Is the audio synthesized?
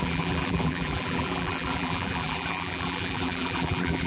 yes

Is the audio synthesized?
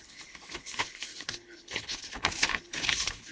yes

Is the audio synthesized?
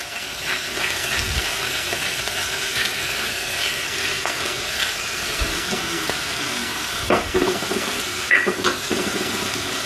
yes